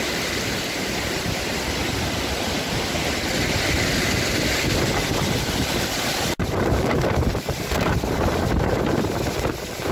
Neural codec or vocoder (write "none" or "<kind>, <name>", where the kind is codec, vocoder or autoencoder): none